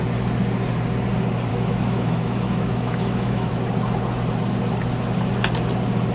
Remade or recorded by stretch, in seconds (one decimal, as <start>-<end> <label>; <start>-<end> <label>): 0.0-1.5 recorded; 1.5-3.5 remade; 3.5-6.1 recorded